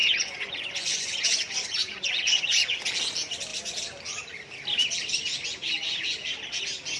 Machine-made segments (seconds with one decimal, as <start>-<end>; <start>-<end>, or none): 0.0-2.8